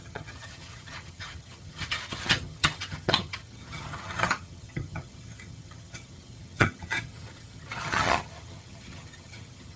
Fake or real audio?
fake